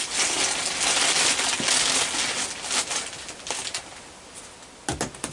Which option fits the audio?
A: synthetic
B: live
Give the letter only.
B